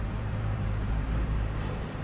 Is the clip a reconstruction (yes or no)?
yes